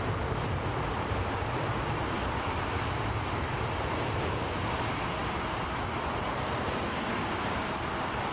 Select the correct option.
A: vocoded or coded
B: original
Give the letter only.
B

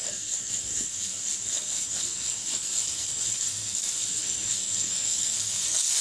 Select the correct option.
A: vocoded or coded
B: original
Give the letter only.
A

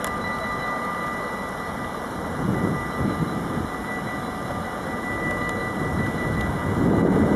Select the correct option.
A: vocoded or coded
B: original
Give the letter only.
B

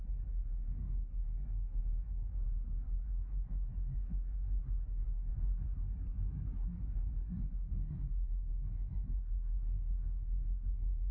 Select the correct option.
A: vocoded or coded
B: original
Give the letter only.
A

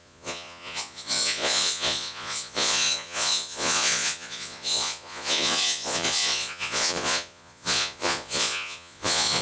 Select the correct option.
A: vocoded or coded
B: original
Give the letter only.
A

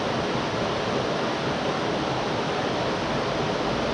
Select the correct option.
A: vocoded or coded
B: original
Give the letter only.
B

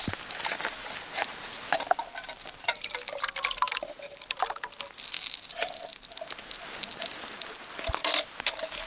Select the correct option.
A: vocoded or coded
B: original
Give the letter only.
B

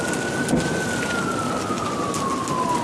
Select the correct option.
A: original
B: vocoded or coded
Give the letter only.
A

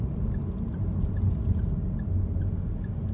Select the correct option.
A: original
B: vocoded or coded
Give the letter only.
A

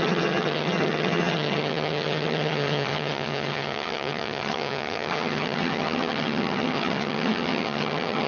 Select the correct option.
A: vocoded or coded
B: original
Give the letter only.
A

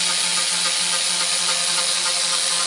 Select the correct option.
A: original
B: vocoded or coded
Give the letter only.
A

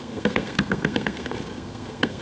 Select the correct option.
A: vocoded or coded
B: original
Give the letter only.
A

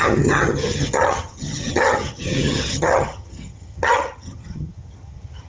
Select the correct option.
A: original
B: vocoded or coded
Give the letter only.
B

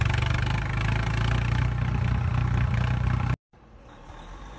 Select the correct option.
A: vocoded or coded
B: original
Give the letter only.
B